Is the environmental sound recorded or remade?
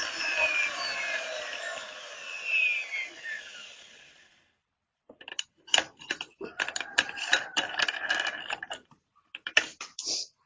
remade